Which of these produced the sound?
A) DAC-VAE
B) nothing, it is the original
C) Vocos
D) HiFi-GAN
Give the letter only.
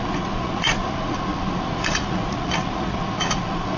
C